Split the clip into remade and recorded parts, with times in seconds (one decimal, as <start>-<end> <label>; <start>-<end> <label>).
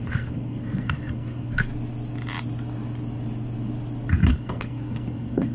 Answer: 0.0-1.7 remade; 1.7-4.3 recorded; 4.3-5.5 remade